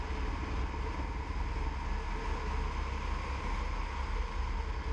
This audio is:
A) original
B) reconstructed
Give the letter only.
A